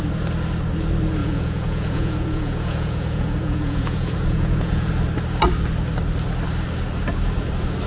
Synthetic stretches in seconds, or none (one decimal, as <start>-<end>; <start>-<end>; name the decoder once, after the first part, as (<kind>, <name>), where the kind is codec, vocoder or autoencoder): 1.2-4.9 (vocoder, Vocos)